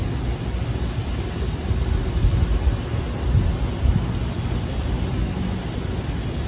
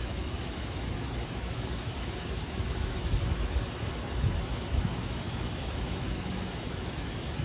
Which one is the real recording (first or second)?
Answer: first